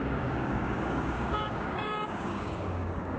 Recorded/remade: remade